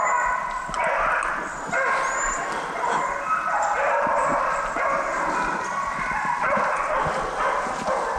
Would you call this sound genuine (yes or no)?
yes